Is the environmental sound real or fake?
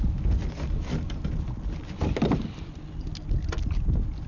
real